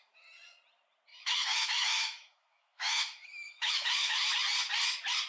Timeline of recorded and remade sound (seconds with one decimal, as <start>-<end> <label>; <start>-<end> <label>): 0.0-1.1 recorded; 1.1-4.3 remade; 4.3-5.3 recorded